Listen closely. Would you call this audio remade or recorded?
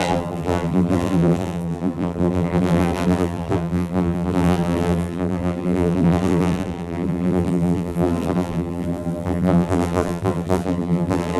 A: remade